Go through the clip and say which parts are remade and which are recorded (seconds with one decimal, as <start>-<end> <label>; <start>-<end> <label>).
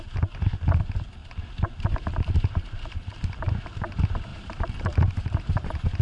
0.0-1.2 recorded; 1.2-2.7 remade; 2.7-4.3 recorded; 4.3-6.0 remade